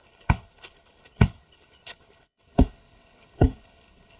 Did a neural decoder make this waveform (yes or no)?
yes